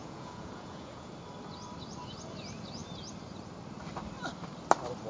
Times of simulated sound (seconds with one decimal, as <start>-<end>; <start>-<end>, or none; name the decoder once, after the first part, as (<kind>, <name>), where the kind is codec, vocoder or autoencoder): 0.0-1.1 (vocoder, Vocos)